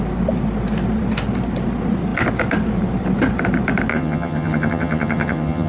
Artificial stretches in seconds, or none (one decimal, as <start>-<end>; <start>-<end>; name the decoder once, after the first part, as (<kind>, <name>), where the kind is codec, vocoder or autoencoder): 3.9-5.7 (vocoder, HiFi-GAN)